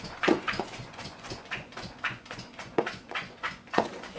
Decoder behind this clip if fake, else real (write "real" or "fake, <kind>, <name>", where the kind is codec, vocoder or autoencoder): fake, vocoder, Vocos